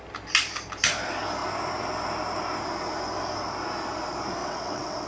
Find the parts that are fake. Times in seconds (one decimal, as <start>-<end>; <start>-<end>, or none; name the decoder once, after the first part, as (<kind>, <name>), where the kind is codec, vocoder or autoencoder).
4.4-5.1 (vocoder, WaveNeXt)